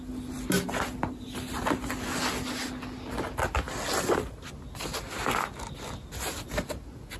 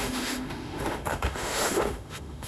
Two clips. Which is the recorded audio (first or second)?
first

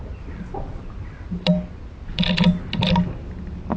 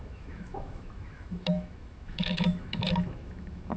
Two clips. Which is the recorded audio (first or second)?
first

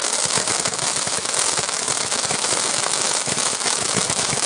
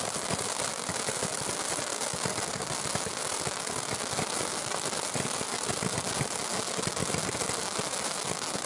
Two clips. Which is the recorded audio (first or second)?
second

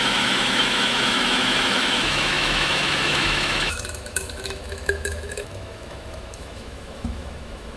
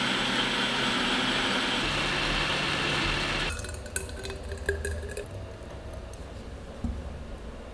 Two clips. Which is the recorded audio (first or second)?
second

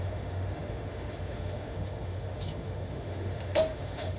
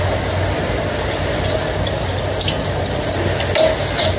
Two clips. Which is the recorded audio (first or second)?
second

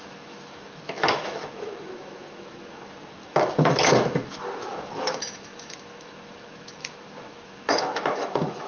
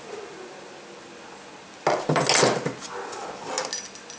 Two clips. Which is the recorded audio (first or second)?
second